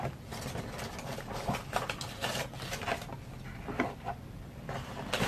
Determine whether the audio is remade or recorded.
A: recorded